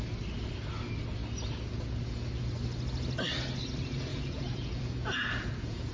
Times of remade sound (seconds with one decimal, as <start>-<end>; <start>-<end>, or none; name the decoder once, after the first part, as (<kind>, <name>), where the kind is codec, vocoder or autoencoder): 4.1-5.9 (vocoder, Vocos)